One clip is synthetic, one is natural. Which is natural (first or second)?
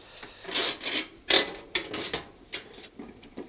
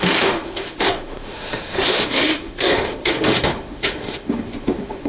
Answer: first